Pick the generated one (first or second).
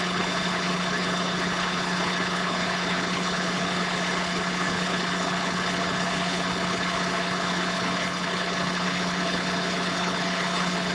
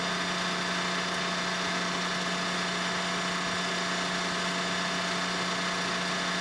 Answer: first